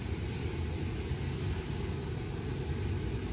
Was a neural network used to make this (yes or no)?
no